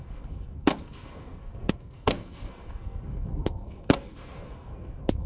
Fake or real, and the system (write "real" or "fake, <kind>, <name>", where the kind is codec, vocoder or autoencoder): fake, codec, SNAC